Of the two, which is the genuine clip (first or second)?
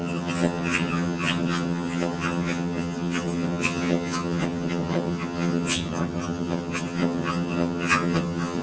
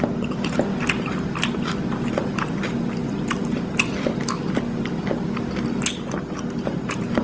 second